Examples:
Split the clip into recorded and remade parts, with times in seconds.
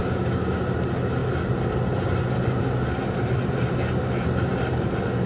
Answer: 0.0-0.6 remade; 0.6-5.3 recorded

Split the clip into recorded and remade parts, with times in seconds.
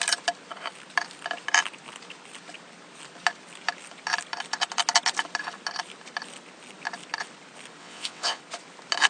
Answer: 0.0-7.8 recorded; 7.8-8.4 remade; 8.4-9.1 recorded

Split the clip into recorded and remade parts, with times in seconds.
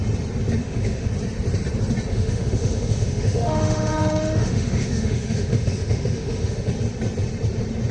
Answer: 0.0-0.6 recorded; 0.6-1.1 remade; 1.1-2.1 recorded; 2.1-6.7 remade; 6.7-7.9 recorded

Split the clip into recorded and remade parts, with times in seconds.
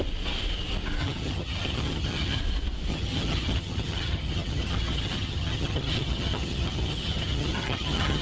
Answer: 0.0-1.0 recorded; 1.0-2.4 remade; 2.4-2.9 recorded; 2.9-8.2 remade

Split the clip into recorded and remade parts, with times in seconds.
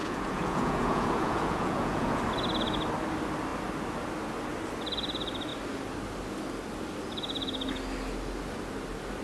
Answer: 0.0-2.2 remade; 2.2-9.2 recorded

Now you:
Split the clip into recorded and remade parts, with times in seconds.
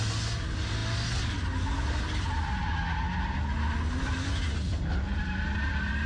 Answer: 0.0-6.1 recorded